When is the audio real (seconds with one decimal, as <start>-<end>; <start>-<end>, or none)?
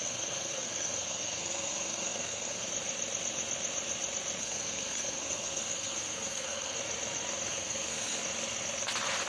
2.7-4.4; 6.8-7.5; 8.2-9.3